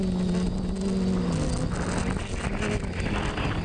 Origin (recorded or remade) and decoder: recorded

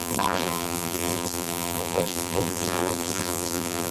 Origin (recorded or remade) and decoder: remade, vocoder, BigVGAN v2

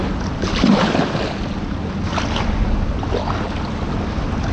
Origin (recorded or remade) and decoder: recorded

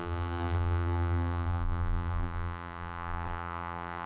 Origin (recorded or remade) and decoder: remade, vocoder, BigVGAN v2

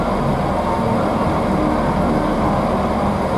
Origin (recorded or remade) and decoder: recorded